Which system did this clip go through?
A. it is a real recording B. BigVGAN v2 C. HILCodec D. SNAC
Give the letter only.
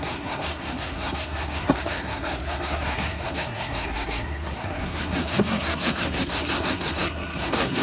D